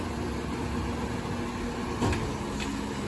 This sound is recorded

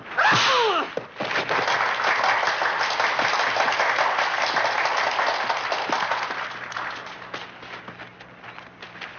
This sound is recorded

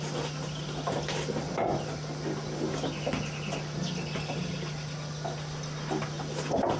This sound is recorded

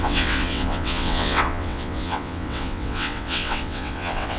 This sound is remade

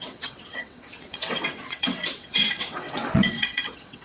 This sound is remade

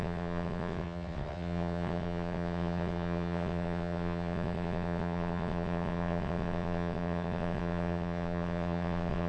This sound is remade